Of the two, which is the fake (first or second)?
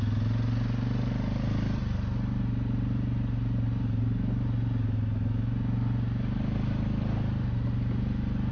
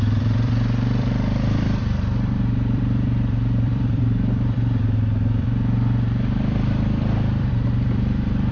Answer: second